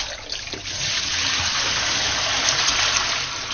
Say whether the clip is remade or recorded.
recorded